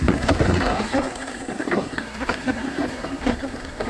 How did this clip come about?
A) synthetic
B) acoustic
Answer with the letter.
A